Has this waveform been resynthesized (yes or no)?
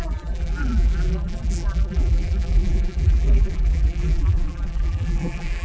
yes